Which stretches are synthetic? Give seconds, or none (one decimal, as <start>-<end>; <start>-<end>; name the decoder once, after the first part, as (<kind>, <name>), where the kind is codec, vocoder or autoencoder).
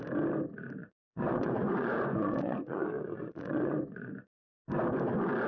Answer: 0.8-4.1 (vocoder, Vocos)